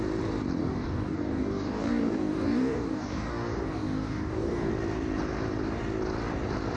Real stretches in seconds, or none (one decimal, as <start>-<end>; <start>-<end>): 0.0-0.6; 4.7-6.8